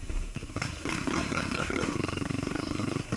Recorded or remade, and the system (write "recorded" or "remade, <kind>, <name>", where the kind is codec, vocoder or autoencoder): remade, codec, SNAC